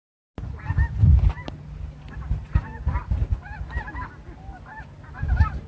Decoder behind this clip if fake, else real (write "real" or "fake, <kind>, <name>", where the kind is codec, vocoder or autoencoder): real